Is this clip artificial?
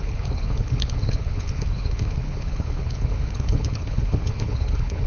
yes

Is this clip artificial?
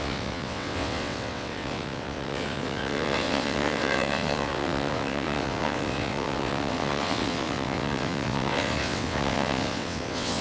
yes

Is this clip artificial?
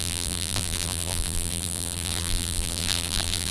yes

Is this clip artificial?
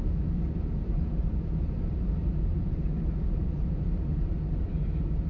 yes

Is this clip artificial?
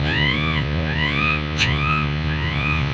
yes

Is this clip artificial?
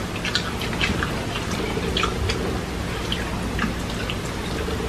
no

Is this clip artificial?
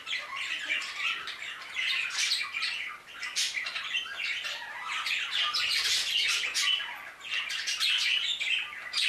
no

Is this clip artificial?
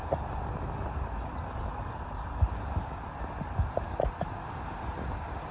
no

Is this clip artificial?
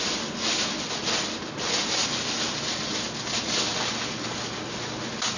no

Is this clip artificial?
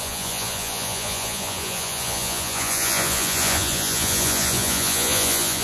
yes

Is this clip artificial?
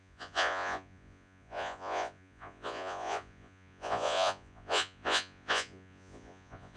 yes